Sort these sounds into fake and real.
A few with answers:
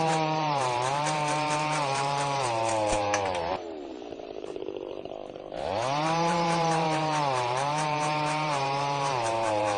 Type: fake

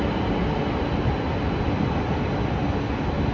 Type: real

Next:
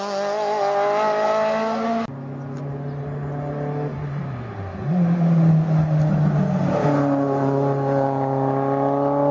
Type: real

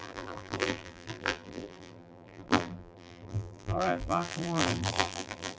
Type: fake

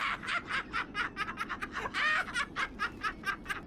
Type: real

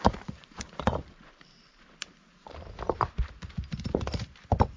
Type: fake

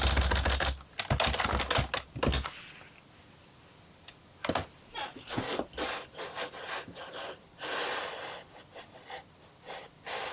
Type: real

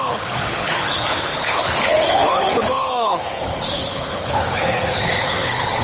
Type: fake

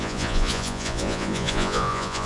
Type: fake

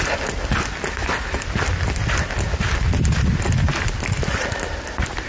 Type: real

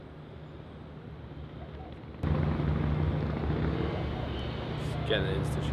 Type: real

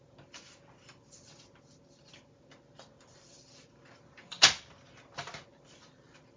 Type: real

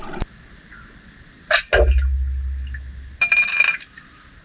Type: real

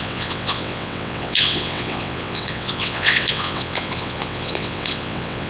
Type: fake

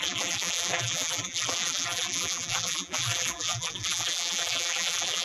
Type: fake